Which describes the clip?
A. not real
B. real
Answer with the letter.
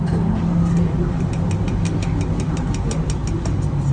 B